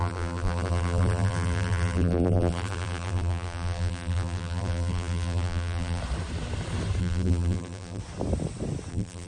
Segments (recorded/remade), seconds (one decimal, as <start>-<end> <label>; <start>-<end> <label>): 0.0-6.0 remade; 6.0-7.0 recorded; 7.0-8.0 remade; 8.0-8.9 recorded; 8.9-9.3 remade